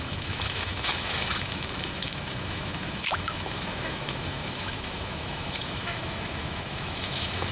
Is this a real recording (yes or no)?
no